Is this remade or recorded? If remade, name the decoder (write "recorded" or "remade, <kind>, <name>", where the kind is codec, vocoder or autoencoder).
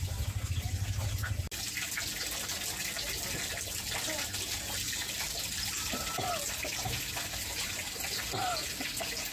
recorded